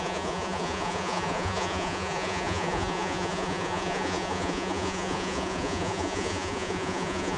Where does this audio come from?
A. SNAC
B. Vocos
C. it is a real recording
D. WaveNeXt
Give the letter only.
B